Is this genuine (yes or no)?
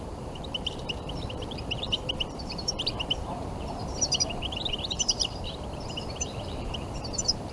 no